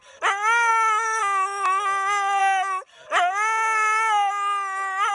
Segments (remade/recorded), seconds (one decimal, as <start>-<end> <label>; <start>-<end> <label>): 0.0-0.7 recorded; 0.7-1.2 remade; 1.2-5.1 recorded